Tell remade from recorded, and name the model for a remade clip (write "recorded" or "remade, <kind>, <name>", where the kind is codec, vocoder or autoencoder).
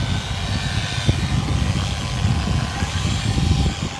recorded